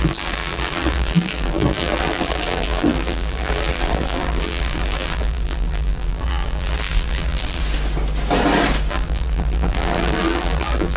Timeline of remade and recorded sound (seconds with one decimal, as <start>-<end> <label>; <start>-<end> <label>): 0.0-7.6 remade; 7.6-8.9 recorded; 8.9-11.0 remade